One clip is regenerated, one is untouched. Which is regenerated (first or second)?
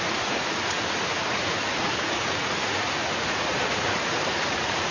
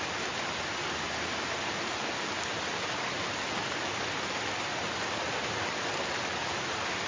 first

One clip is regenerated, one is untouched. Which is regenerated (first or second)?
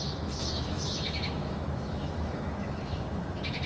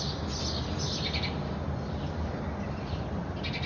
first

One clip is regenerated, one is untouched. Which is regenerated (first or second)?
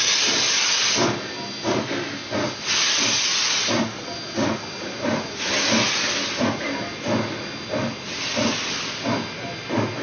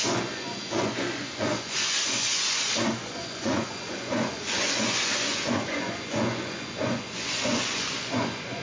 second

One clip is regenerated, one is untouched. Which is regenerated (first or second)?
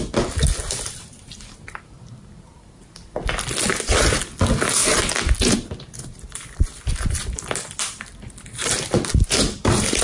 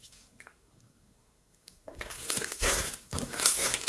second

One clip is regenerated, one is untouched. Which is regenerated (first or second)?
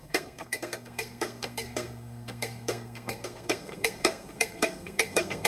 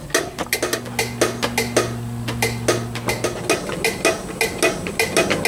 first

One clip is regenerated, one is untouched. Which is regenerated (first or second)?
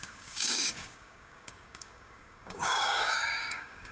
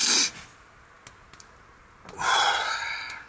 first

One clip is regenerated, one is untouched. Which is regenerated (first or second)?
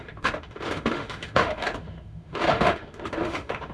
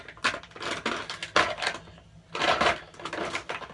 first